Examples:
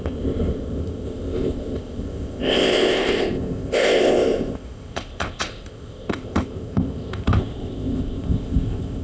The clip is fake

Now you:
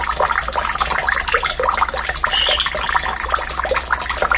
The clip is real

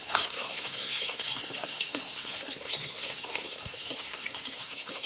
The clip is fake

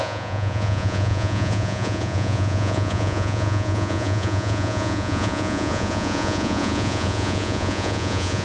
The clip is fake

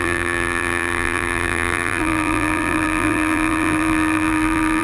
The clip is fake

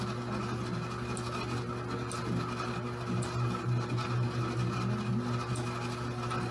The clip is real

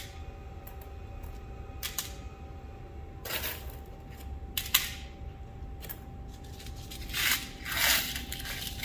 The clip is real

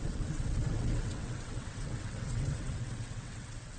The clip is fake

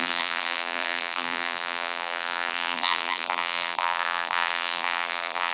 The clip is fake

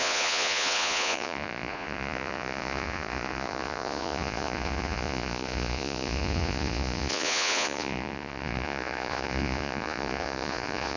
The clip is fake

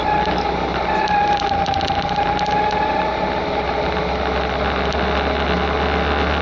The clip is real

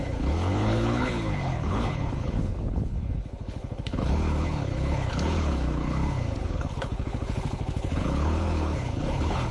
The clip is fake